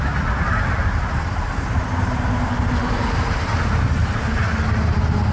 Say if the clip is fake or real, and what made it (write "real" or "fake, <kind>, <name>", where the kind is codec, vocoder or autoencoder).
real